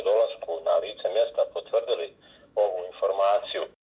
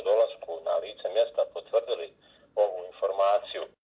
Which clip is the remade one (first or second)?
first